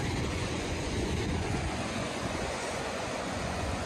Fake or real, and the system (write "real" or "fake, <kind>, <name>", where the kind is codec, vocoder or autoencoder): fake, vocoder, Vocos